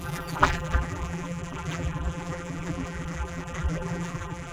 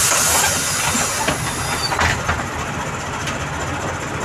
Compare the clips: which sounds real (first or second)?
second